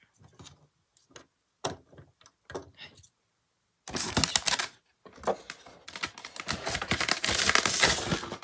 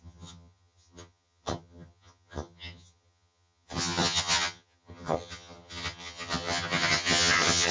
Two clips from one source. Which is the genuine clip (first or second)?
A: first